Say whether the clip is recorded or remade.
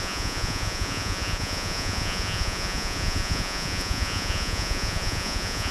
remade